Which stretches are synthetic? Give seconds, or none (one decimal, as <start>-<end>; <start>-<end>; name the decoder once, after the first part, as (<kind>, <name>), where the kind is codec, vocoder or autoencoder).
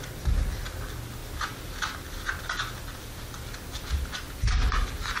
none